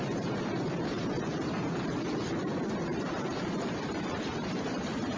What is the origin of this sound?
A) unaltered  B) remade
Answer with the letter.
B